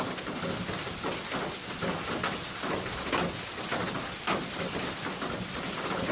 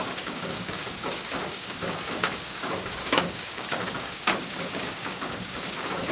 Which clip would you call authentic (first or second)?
first